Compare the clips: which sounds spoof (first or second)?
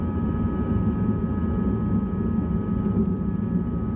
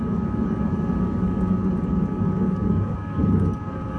second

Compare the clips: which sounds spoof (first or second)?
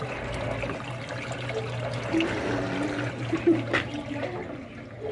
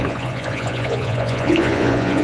second